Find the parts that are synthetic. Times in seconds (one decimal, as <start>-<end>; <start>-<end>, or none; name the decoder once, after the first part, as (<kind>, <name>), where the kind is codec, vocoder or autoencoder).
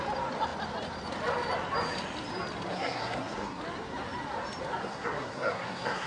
2.7-3.6 (codec, SNAC); 4.8-6.1